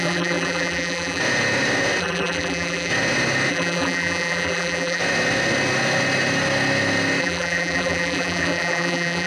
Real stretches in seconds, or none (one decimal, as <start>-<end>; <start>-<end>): 1.2-2.0; 2.9-3.5; 5.0-7.2